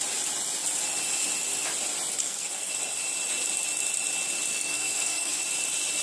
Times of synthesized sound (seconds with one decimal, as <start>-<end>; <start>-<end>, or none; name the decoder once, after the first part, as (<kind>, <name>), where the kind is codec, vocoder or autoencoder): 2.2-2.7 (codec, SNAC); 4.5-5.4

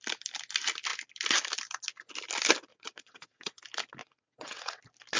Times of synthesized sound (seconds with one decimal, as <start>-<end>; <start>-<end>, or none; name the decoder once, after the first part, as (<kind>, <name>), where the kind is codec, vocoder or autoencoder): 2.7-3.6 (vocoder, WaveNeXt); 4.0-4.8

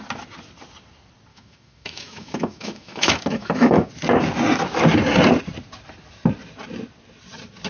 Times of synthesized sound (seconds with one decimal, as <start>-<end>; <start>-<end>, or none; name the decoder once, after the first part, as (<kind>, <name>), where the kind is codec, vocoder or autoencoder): 1.3-3.9 (autoencoder, DAC-VAE)

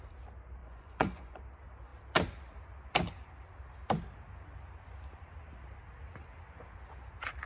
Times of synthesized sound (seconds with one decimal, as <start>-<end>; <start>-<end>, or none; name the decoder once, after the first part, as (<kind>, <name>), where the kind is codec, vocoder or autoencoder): 0.6-1.4 (vocoder, Vocos)